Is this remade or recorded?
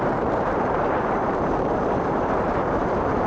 remade